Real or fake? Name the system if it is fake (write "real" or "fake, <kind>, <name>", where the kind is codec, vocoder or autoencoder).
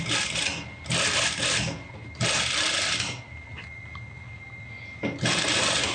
real